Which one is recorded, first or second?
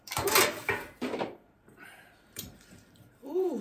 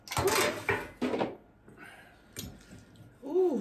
second